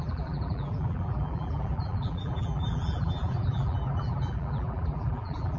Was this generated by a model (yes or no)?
yes